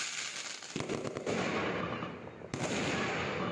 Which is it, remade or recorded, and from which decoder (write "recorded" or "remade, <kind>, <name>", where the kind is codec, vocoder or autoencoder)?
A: recorded